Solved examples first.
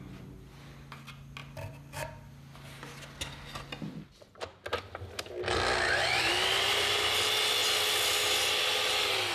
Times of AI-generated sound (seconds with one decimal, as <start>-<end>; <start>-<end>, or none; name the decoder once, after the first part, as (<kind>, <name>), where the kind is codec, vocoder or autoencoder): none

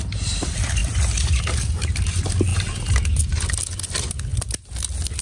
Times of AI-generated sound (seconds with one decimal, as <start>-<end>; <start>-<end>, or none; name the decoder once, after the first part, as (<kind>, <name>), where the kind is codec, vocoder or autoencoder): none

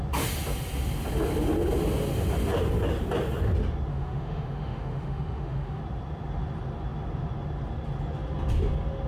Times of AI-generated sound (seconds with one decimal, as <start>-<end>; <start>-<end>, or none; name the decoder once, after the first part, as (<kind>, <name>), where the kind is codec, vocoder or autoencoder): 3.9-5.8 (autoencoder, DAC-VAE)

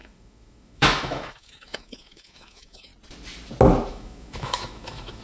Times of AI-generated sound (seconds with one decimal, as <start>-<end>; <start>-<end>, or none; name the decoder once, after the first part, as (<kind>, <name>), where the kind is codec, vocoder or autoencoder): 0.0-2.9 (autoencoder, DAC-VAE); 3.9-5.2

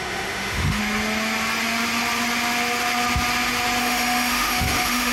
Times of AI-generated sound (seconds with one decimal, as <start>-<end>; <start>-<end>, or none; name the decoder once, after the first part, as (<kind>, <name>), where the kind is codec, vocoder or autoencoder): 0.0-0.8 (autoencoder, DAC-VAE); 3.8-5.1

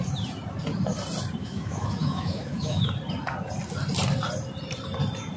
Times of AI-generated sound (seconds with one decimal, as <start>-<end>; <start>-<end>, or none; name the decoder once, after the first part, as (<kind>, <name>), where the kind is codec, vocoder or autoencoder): 1.4-2.9 (autoencoder, DAC-VAE)

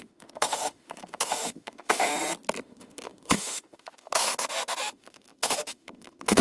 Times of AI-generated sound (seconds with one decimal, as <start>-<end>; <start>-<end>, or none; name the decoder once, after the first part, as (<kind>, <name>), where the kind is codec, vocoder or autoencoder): 0.0-2.1 (autoencoder, DAC-VAE); 2.6-6.4

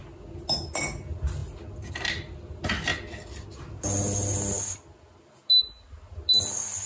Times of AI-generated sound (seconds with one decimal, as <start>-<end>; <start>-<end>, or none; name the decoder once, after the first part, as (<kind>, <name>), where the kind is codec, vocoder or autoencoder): none